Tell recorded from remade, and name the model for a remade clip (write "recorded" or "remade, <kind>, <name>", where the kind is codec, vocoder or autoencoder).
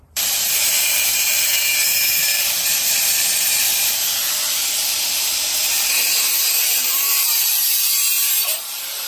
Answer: remade, vocoder, BigVGAN v2